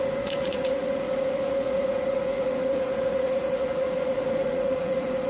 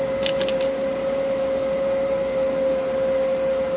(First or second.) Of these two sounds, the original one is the second